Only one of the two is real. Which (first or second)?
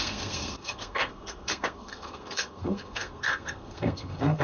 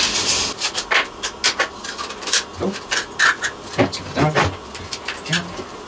second